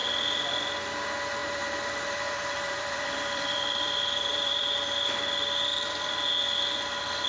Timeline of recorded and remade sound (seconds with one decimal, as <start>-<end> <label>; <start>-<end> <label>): 0.0-1.4 recorded; 1.4-5.1 remade; 5.1-5.7 recorded; 5.7-6.2 remade; 6.2-7.3 recorded

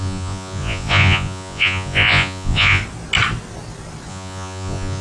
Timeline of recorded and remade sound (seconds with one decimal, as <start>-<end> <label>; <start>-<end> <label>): 0.0-2.8 remade; 2.8-4.1 recorded; 4.1-5.0 remade

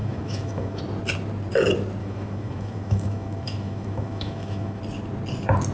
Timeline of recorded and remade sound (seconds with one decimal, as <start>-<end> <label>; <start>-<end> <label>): 0.0-0.8 remade; 0.8-2.0 recorded; 2.0-4.8 remade; 4.8-5.7 recorded

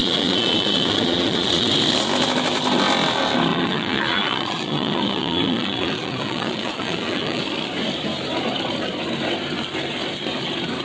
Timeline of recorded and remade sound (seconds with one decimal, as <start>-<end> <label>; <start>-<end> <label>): 0.0-1.7 remade; 1.7-3.5 recorded; 3.5-7.4 remade; 7.4-10.8 recorded

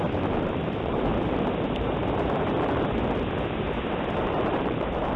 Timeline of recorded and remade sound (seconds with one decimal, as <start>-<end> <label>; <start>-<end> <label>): 0.0-1.1 remade; 1.1-4.2 recorded; 4.2-5.2 remade